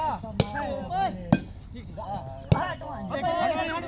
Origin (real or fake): real